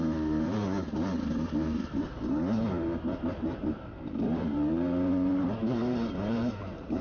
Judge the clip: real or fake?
fake